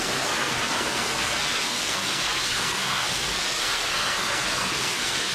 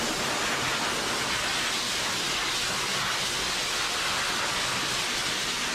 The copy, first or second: first